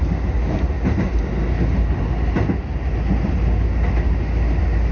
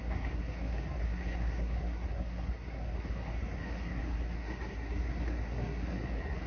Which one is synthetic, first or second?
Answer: second